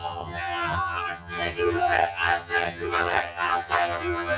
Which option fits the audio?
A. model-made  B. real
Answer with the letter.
A